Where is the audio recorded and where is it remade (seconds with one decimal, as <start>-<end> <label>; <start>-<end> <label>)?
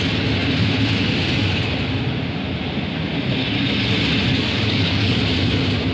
0.0-4.3 recorded; 4.3-5.2 remade; 5.2-5.9 recorded